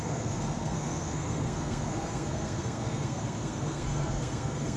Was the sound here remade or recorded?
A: remade